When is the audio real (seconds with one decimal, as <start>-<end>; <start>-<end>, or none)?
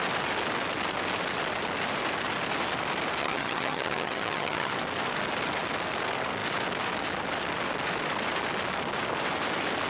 0.0-3.2; 4.7-9.9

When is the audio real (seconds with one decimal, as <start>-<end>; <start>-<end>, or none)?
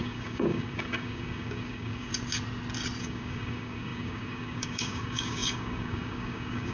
2.1-3.0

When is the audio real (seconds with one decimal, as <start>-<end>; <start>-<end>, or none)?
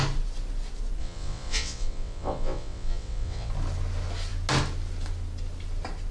0.0-1.0; 3.5-6.1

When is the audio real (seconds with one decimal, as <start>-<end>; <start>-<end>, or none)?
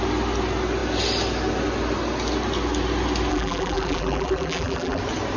0.0-3.3; 5.0-5.4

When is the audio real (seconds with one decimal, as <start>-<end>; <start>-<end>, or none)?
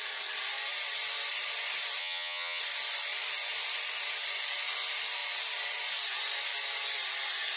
0.0-2.0; 2.6-7.6